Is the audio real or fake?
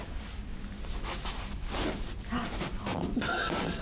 real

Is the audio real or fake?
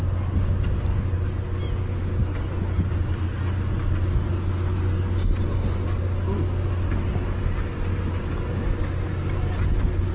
real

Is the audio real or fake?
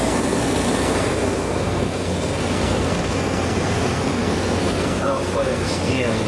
fake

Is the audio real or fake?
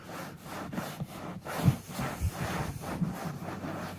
fake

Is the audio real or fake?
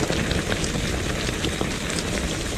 real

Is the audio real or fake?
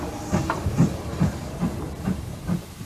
fake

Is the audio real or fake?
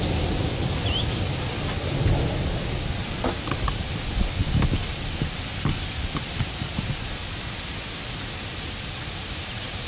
real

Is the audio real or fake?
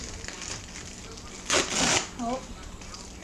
real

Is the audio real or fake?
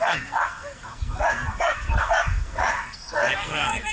fake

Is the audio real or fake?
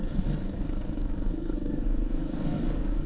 fake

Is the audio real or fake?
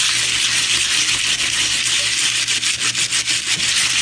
real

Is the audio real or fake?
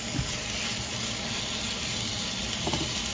real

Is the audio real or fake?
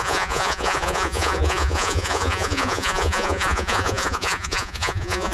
fake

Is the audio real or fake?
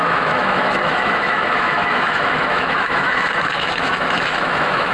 fake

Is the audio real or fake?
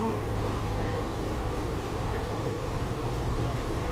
fake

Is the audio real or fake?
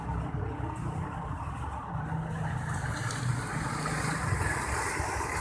real